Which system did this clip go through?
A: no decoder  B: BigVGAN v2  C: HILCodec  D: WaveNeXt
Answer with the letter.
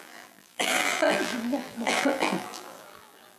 B